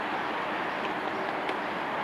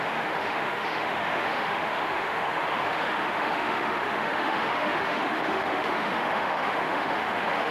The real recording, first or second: first